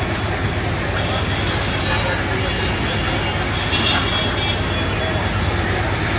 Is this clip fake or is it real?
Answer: real